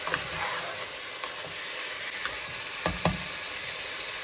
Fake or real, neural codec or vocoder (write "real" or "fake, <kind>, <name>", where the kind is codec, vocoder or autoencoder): real